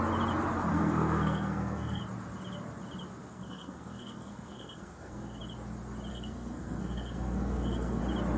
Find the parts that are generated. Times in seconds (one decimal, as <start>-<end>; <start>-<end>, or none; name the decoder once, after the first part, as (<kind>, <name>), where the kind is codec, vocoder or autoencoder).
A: 0.7-2.0 (codec, SNAC); 3.2-5.4; 6.1-8.0